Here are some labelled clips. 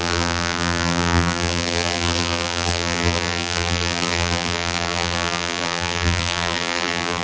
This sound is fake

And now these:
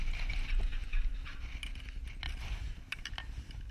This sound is real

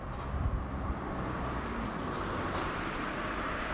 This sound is fake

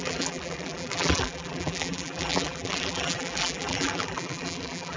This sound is fake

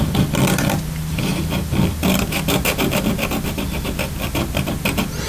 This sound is fake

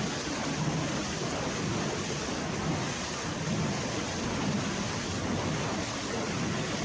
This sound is real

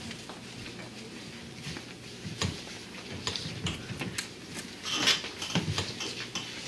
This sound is real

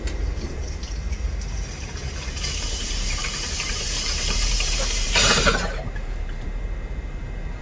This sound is fake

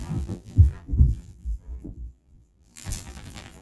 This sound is fake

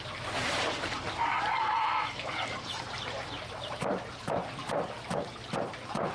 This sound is fake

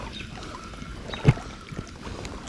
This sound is real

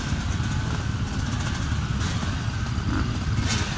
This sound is fake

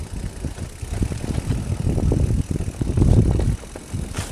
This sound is real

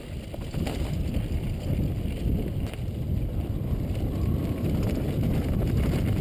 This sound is real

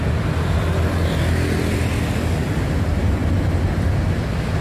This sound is real